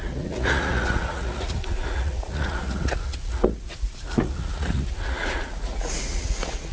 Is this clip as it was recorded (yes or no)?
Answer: no